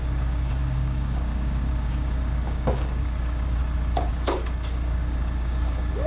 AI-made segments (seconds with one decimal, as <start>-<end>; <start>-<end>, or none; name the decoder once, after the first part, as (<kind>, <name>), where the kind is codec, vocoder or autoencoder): 0.0-3.6 (codec, DAC); 4.1-6.1